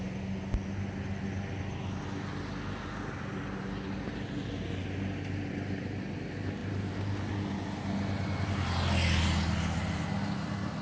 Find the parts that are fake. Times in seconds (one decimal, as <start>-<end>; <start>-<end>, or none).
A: none